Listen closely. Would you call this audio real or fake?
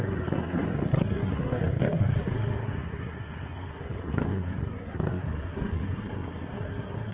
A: fake